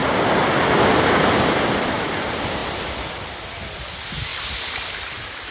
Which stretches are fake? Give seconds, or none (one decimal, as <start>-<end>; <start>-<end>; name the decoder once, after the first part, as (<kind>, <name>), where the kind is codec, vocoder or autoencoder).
0.0-2.2 (vocoder, BigVGAN v2); 2.6-3.1; 4.3-5.5